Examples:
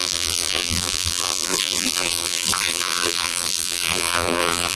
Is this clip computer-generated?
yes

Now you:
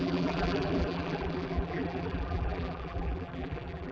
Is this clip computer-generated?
yes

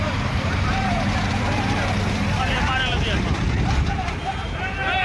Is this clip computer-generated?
yes